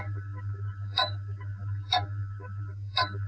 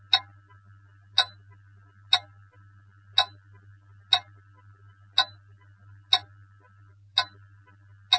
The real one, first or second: second